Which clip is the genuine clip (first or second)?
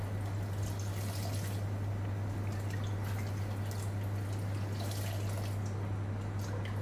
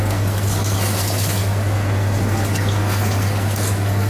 first